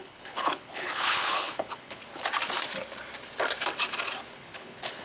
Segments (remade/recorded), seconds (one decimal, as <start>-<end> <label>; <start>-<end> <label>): 0.0-2.0 remade; 2.0-4.3 recorded; 4.3-5.0 remade